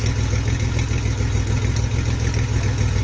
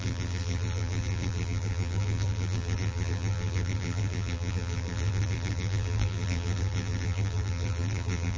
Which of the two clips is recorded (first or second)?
first